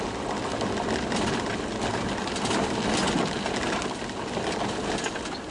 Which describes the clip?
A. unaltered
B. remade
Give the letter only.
A